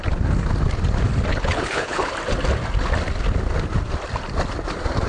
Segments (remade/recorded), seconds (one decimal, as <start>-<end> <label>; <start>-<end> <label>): 0.0-1.3 recorded; 1.3-2.1 remade; 2.1-5.1 recorded